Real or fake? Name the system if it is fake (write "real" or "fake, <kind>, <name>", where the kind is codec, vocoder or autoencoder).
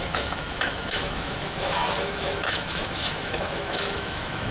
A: fake, autoencoder, DAC-VAE